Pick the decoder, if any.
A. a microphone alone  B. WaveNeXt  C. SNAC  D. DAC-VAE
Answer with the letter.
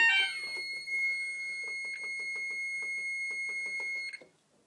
A